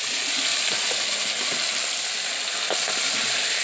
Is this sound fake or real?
real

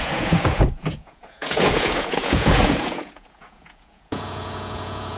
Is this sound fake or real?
fake